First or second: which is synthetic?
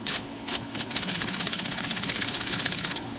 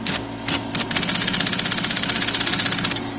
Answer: first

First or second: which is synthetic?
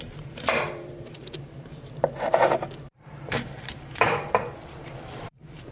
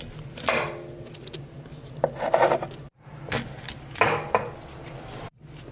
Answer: first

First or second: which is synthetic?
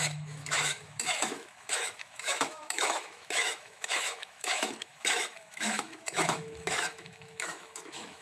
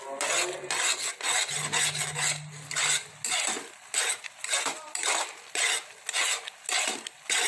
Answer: first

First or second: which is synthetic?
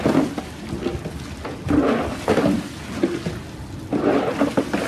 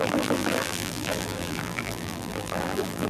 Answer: second